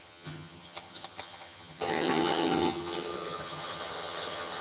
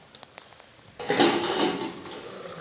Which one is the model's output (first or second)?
first